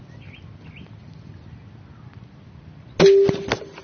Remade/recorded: recorded